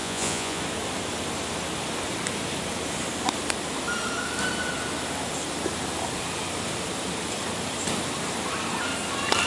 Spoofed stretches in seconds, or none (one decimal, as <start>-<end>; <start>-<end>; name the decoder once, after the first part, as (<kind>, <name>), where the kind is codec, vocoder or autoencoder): 0.0-0.6 (vocoder, Vocos)